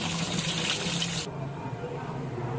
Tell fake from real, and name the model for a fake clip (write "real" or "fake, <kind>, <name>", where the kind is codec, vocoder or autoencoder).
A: real